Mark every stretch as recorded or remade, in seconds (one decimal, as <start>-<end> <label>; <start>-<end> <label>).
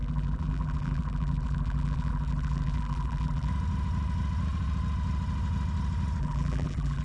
0.0-3.5 remade; 3.5-6.2 recorded; 6.2-7.0 remade